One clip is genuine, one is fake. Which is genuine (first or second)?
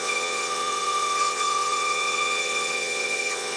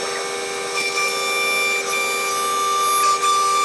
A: second